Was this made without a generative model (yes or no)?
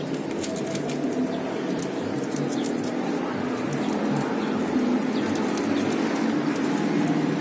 yes